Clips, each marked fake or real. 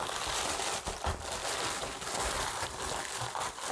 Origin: real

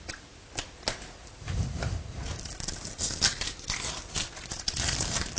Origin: fake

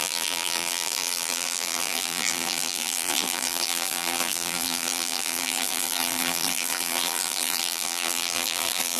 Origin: fake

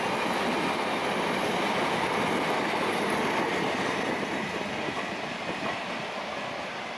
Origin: real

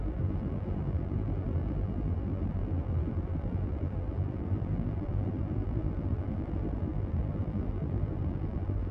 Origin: fake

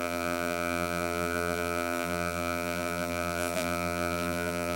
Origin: fake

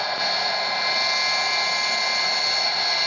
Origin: real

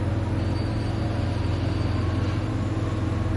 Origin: real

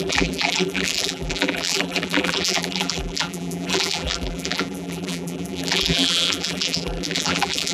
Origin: fake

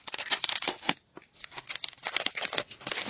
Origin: fake